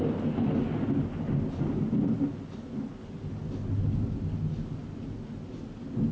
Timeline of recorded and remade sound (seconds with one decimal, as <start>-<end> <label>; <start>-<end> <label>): 0.0-6.1 recorded